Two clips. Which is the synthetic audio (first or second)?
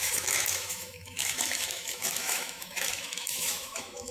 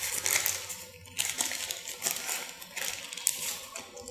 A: first